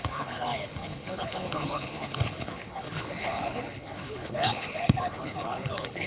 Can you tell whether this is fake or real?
fake